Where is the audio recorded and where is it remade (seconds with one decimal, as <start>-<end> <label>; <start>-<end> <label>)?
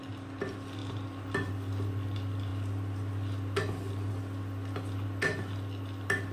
0.0-6.3 recorded